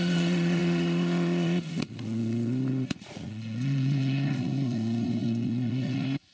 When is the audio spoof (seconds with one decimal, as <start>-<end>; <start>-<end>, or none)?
0.0-6.3